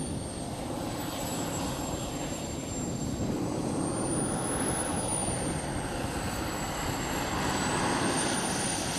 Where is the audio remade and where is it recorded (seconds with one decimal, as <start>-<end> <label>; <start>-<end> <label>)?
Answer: 0.0-1.3 recorded; 1.3-2.9 remade; 2.9-9.0 recorded

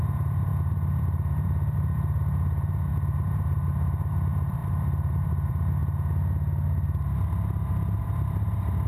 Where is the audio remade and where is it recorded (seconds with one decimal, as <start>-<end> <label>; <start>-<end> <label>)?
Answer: 0.0-5.8 remade; 5.8-8.0 recorded; 8.0-8.9 remade

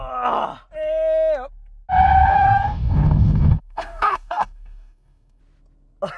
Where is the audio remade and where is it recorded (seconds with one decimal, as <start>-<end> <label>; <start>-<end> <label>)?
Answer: 0.0-2.3 recorded; 2.3-5.4 remade; 5.4-6.2 recorded

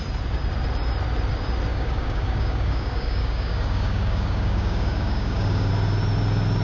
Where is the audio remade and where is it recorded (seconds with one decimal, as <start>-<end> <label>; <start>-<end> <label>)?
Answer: 0.0-1.7 recorded; 1.7-5.7 remade; 5.7-6.6 recorded